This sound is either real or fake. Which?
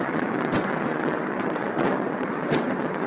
fake